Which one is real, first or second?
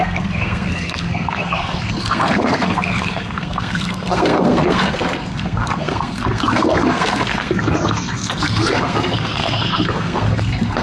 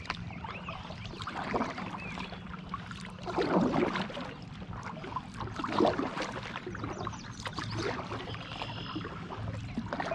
second